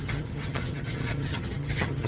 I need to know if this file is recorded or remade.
remade